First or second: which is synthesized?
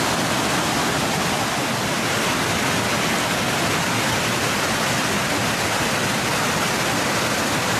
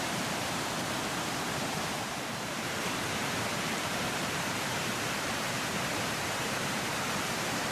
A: second